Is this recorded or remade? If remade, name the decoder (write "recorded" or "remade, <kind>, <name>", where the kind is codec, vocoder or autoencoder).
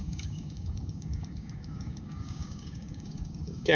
remade, codec, DAC